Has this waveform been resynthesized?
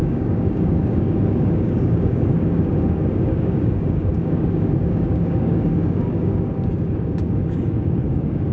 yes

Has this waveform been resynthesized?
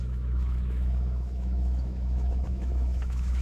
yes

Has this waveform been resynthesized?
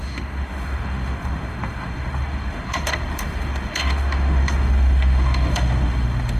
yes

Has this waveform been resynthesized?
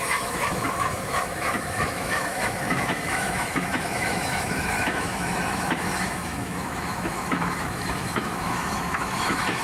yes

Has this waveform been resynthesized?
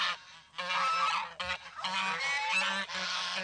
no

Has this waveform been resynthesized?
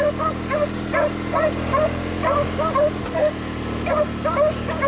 no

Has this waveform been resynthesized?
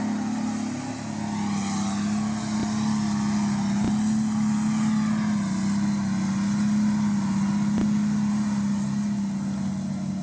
no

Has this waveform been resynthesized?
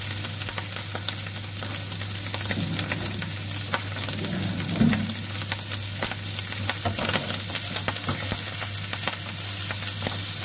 no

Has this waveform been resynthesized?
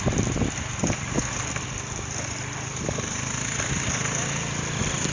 no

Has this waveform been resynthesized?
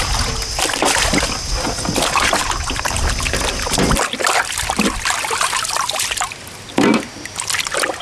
no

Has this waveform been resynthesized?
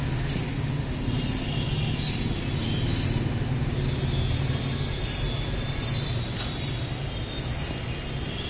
no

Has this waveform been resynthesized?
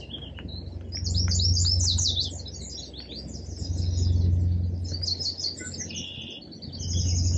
no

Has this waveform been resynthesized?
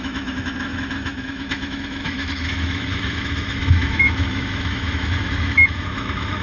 yes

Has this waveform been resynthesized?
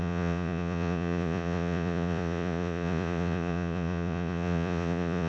yes